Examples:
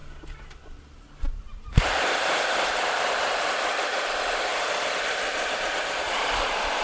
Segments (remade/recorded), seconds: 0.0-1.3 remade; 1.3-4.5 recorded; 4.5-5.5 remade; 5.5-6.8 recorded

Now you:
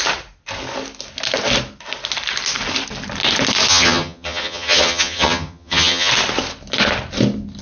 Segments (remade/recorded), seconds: 0.0-3.7 recorded; 3.7-6.1 remade; 6.1-7.6 recorded

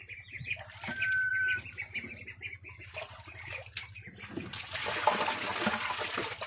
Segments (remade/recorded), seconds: 0.0-6.5 recorded

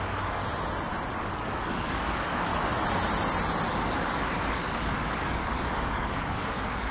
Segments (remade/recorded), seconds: 0.0-0.4 remade; 0.4-1.2 recorded; 1.2-2.5 remade; 2.5-3.7 recorded; 3.7-6.9 remade

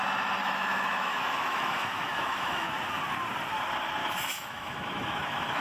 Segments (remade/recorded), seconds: 0.0-0.4 recorded; 0.4-2.7 remade; 2.7-4.0 recorded; 4.0-5.6 remade

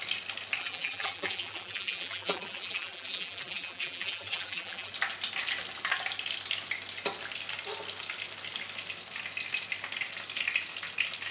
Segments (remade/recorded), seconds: 0.0-0.6 recorded; 0.6-4.9 remade; 4.9-11.3 recorded

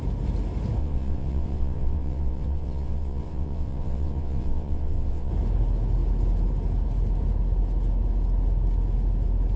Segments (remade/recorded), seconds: 0.0-0.8 recorded; 0.8-5.3 remade; 5.3-9.6 recorded

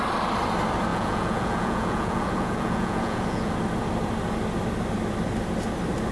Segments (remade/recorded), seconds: 0.0-0.9 recorded; 0.9-3.5 remade; 3.5-6.1 recorded